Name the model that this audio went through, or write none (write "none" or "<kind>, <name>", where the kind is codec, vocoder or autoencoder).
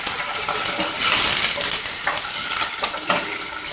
none